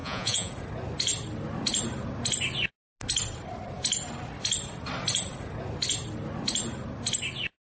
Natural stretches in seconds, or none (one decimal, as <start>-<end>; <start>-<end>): 0.5-7.7